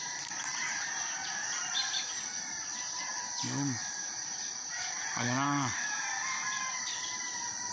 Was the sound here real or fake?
fake